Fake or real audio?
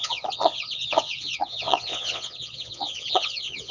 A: fake